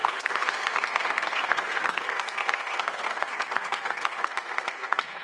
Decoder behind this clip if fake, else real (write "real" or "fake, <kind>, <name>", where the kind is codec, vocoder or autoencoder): fake, codec, SNAC